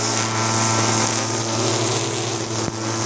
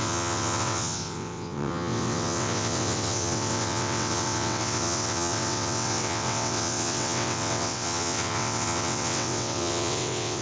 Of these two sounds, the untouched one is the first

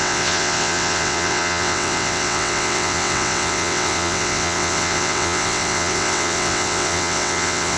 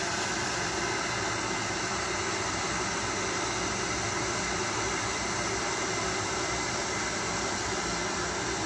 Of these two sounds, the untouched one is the second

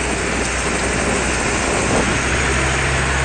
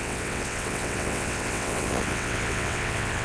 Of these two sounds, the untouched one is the first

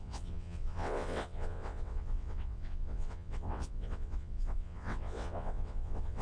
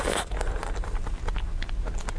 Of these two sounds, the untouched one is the second